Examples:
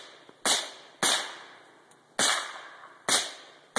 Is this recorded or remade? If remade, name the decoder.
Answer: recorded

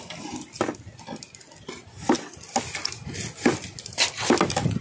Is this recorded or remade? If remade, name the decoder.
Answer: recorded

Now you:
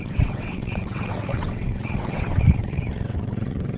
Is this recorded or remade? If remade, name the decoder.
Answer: remade, vocoder, WaveNeXt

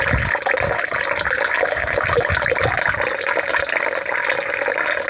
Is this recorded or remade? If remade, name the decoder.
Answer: recorded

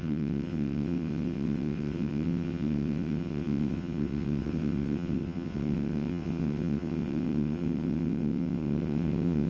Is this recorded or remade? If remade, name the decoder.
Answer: remade, vocoder, WaveNeXt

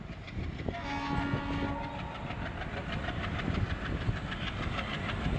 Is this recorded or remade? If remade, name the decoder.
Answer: recorded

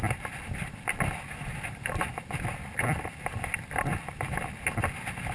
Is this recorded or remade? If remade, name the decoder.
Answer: recorded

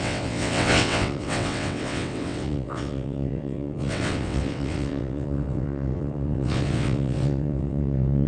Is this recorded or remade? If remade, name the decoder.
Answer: remade, vocoder, WaveNeXt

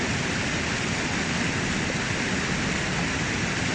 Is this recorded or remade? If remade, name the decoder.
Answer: recorded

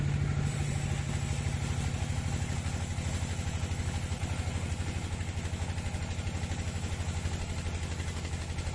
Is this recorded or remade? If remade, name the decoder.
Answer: recorded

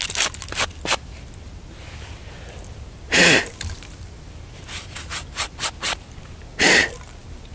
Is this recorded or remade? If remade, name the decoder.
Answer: recorded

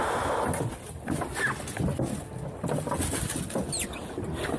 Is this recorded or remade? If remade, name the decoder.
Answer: recorded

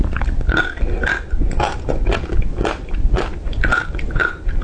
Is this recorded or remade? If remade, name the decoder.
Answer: recorded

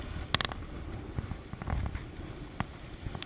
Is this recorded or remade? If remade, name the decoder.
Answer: recorded